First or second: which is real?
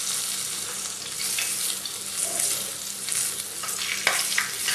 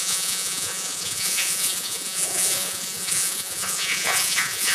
first